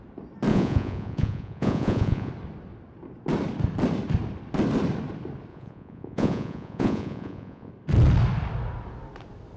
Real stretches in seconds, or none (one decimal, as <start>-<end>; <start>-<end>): 0.0-0.5; 2.3-5.5; 7.7-9.6